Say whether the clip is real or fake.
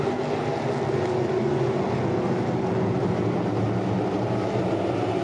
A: real